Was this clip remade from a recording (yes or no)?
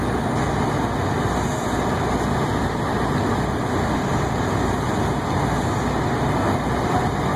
no